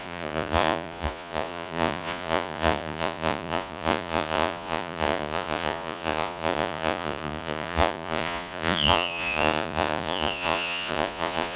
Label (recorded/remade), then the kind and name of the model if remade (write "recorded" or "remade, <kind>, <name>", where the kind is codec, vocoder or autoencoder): remade, vocoder, Vocos